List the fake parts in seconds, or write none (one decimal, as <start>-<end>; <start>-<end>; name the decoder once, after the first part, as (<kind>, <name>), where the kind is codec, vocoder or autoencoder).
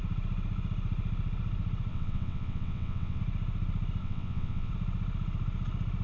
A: 1.9-3.2 (vocoder, WaveNeXt); 4.0-4.7